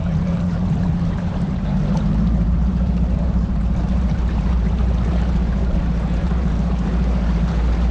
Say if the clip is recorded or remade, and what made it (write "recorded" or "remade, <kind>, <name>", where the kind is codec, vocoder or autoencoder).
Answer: remade, vocoder, BigVGAN v2